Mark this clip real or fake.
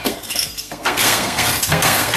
fake